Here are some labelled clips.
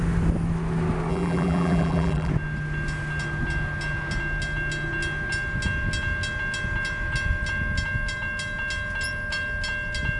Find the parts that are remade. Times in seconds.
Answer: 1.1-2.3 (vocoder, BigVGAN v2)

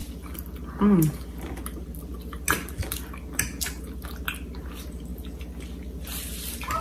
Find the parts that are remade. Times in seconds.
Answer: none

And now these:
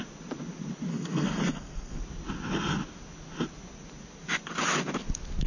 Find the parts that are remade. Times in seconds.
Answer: 0.9-2.0 (codec, SNAC)